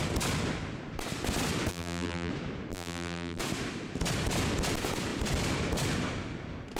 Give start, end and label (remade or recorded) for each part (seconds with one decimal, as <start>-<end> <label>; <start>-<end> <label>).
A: 0.0-1.7 recorded; 1.7-2.3 remade; 2.3-2.7 recorded; 2.7-3.4 remade; 3.4-6.8 recorded